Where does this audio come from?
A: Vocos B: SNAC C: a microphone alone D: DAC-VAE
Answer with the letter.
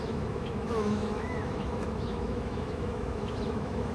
D